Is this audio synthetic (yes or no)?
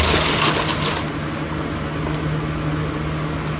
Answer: no